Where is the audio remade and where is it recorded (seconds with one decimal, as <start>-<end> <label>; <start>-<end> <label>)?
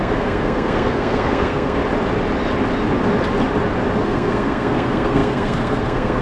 0.0-1.8 remade; 1.8-4.0 recorded; 4.0-6.2 remade